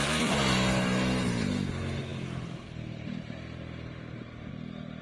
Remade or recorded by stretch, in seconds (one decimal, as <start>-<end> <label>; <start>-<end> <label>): 0.0-5.0 recorded